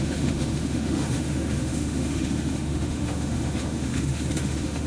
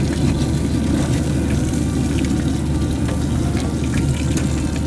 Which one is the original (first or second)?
second